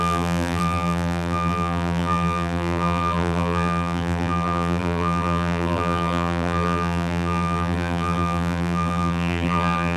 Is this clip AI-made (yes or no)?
yes